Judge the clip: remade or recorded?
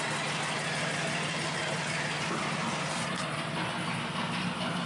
recorded